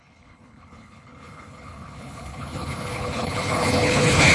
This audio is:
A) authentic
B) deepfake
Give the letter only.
B